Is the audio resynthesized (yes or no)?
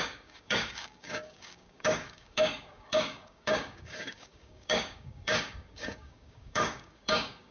yes